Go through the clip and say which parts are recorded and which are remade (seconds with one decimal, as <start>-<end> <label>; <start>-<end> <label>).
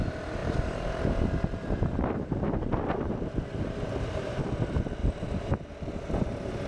0.0-0.4 recorded; 0.4-4.4 remade; 4.4-5.0 recorded; 5.0-5.7 remade; 5.7-6.7 recorded